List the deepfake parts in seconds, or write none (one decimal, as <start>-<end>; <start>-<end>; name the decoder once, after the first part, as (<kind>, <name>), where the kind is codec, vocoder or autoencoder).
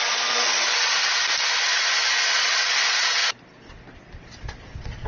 0.0-1.1 (vocoder, Vocos); 2.5-3.2; 4.4-5.1